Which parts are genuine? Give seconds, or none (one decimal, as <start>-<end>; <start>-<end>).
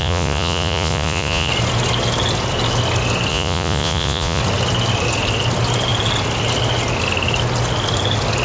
1.5-3.3; 4.4-8.4